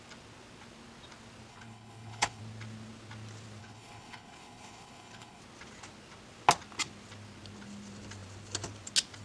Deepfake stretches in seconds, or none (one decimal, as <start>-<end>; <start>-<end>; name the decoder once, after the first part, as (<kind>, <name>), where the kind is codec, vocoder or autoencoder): 1.5-2.4 (codec, HILCodec); 3.6-5.4